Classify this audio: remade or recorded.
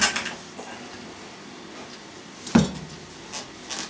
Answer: recorded